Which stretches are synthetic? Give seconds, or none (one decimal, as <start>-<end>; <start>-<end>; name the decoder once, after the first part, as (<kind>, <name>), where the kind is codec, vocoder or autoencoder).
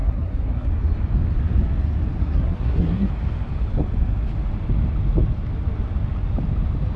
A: 0.0-0.7 (codec, SNAC); 2.2-3.1